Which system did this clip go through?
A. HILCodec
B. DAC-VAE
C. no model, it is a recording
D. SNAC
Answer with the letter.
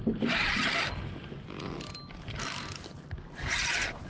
C